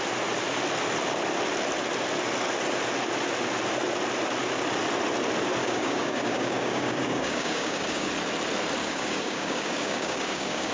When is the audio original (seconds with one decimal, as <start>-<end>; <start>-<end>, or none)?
0.0-5.6; 8.1-8.8